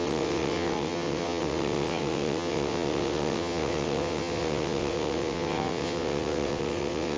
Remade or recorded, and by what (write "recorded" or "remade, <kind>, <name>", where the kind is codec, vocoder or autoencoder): remade, vocoder, WaveNeXt